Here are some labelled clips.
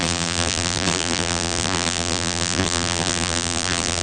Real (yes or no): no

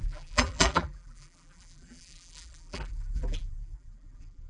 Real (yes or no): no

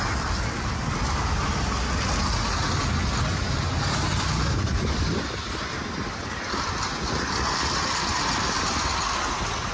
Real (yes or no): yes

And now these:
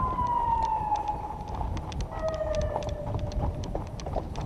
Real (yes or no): yes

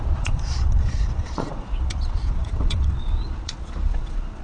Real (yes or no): no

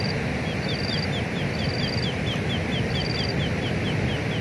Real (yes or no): yes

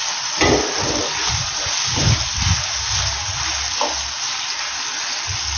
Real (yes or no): yes